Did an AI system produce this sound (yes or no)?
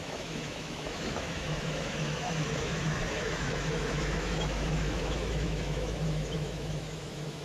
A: yes